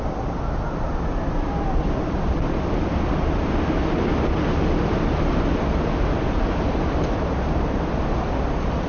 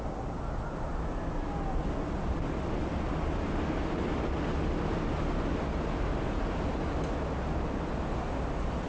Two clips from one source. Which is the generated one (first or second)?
first